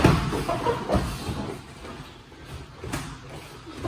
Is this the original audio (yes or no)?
yes